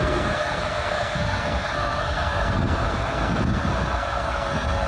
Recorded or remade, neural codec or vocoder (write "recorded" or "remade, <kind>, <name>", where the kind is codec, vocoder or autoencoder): remade, codec, SNAC